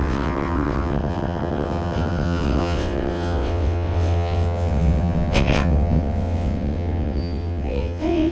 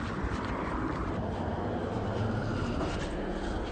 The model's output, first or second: first